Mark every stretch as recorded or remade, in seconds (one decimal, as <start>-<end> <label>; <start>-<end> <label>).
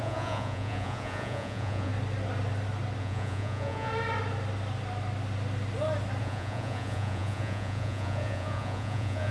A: 0.0-1.9 remade; 1.9-3.0 recorded; 3.0-3.9 remade; 3.9-6.2 recorded; 6.2-9.3 remade